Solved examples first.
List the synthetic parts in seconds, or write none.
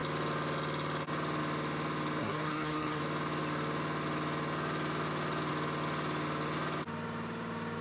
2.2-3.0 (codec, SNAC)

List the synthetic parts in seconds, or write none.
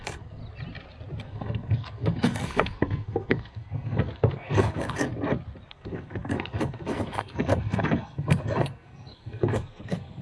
0.0-0.4 (codec, SNAC); 1.2-5.1; 5.7-10.2